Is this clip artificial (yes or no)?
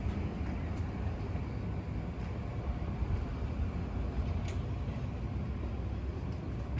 no